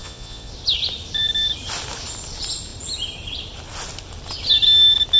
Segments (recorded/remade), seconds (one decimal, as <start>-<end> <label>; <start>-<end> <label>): 0.0-0.5 remade; 0.5-5.2 recorded